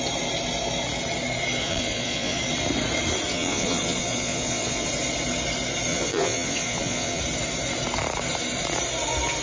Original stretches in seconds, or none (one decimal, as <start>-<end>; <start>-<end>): 0.0-1.6; 2.4-3.3; 4.9-5.9; 7.2-9.4